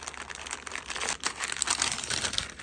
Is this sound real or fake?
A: real